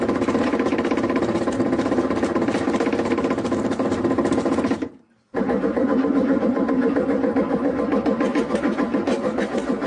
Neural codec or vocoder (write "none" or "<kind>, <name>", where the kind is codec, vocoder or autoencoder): none